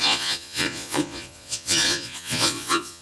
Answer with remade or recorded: remade